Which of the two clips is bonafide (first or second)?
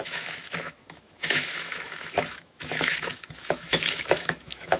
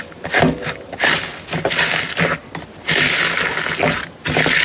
second